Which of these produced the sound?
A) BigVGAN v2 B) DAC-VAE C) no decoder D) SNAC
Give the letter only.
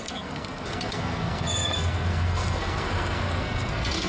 D